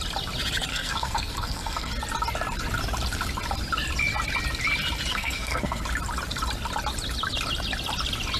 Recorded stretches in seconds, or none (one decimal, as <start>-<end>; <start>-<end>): 0.0-0.7; 1.9-5.1; 5.8-8.4